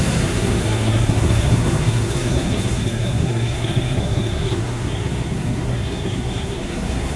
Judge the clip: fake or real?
fake